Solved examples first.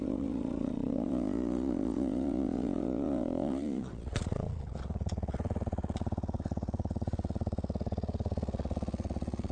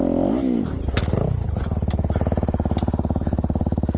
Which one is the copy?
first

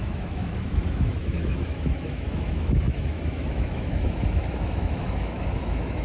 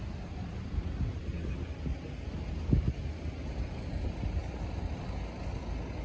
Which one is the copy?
first